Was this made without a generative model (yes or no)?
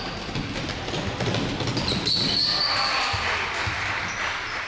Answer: yes